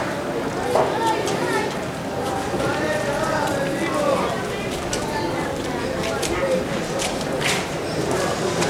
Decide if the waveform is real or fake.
real